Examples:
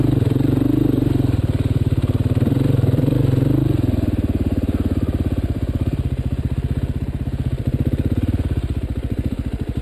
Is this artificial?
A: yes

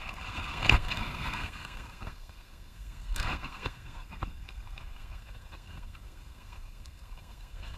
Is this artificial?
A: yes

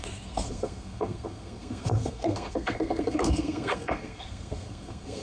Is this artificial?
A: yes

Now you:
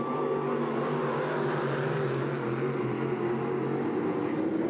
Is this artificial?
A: no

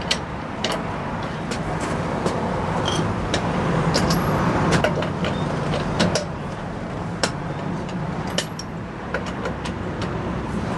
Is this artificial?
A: yes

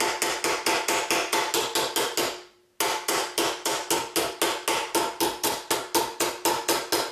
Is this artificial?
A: no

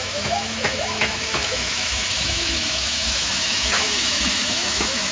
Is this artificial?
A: yes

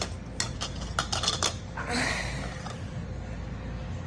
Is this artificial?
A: no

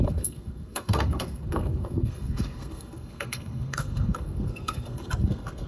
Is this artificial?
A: yes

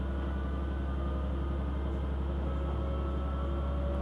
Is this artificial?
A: no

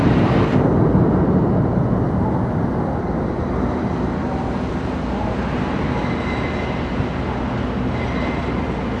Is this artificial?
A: no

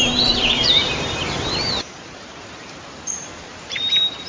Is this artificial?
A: yes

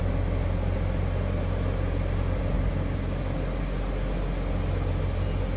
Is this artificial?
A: no